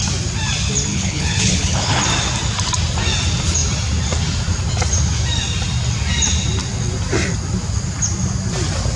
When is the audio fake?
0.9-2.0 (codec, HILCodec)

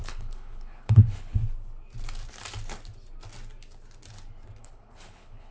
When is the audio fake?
0.0-1.4 (codec, HILCodec); 4.6-5.5

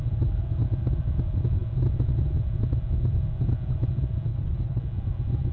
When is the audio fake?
4.3-4.8 (codec, HILCodec)

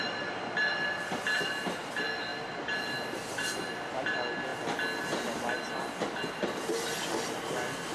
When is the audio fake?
none

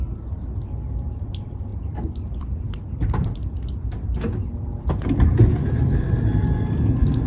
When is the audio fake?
none

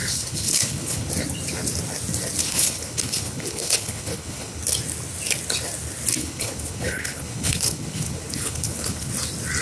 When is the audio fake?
0.0-1.1 (codec, HILCodec); 2.4-4.6; 6.2-9.1

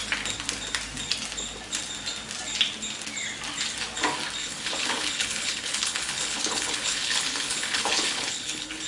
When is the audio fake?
4.4-8.9 (codec, HILCodec)

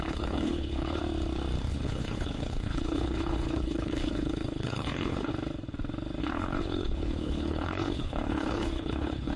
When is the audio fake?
0.0-1.0 (codec, HILCodec); 1.7-5.3; 6.2-9.4